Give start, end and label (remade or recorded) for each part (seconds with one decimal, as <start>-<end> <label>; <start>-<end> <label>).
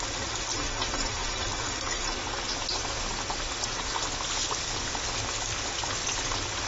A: 0.0-6.7 recorded